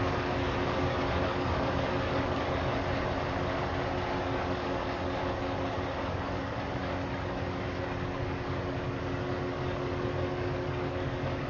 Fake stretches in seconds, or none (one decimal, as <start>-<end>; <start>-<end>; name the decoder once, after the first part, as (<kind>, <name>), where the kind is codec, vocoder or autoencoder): 0.0-2.7 (codec, DAC); 4.2-11.5